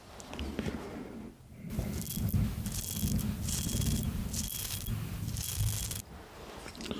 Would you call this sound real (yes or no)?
yes